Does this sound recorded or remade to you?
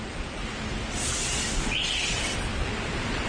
recorded